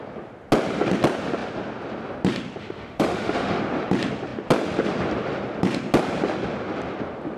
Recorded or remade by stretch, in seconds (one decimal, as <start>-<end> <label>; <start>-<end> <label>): 0.0-2.6 recorded; 2.6-3.6 remade; 3.6-7.4 recorded